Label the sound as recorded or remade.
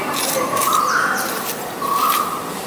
recorded